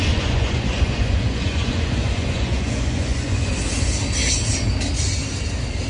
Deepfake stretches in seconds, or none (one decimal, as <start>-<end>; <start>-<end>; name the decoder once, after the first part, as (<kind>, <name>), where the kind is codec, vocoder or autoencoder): 0.0-3.5 (vocoder, Vocos)